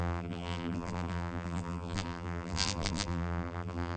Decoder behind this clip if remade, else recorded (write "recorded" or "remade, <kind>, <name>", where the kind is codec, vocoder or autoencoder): remade, vocoder, BigVGAN v2